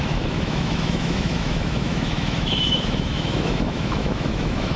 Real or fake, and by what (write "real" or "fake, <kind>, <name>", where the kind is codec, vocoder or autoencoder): fake, autoencoder, DAC-VAE